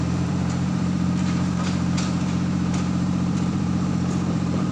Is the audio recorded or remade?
remade